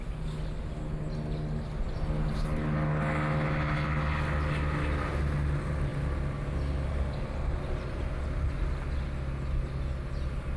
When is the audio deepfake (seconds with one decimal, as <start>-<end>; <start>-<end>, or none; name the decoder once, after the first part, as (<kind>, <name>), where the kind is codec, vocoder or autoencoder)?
none